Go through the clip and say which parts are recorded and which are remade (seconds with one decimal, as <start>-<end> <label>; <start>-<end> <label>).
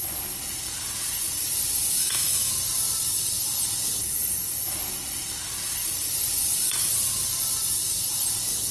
0.0-2.0 recorded; 2.0-2.5 remade; 2.5-8.7 recorded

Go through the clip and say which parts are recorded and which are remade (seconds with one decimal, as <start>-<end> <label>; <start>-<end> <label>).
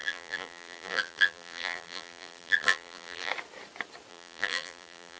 0.0-3.3 remade; 3.3-4.1 recorded; 4.1-5.2 remade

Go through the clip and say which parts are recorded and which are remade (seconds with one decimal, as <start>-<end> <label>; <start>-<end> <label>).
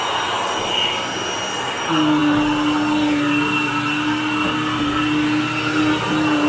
0.0-6.5 recorded